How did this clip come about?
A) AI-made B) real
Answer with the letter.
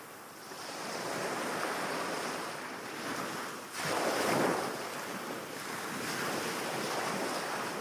B